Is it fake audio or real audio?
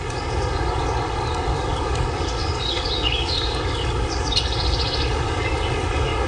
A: fake